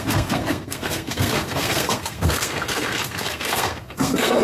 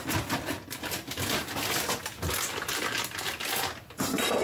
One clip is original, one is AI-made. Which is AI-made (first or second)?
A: first